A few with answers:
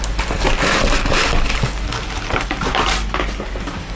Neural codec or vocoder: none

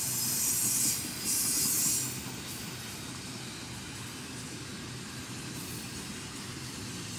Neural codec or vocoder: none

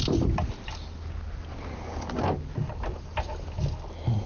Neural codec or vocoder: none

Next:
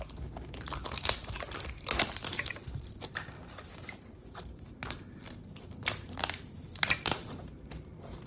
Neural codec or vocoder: vocoder, BigVGAN v2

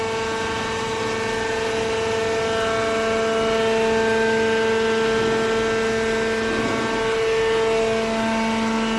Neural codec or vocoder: none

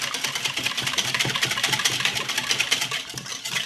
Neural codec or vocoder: vocoder, BigVGAN v2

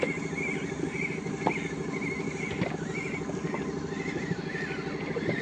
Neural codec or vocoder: none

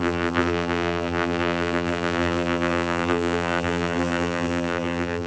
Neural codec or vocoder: vocoder, BigVGAN v2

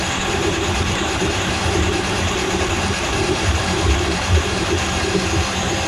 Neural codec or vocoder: vocoder, BigVGAN v2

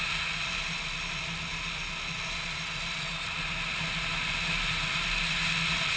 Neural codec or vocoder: none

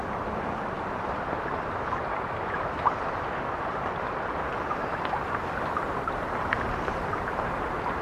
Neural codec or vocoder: none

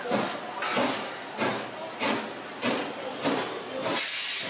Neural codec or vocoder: none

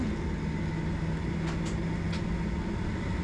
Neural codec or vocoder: none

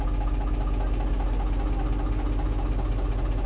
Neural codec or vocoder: none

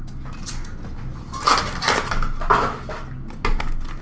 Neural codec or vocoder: none